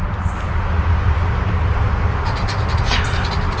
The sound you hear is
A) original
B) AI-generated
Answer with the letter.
A